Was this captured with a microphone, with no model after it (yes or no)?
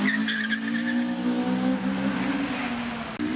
yes